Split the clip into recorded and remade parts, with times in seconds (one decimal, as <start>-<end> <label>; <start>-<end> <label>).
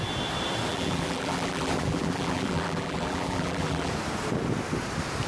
0.0-0.7 recorded; 0.7-3.9 remade; 3.9-5.3 recorded